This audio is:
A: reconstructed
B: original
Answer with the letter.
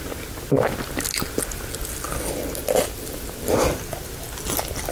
B